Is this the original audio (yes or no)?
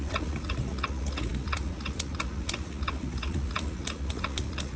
no